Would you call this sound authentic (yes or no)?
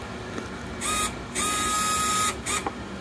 yes